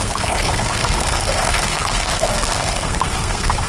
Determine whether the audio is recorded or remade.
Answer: remade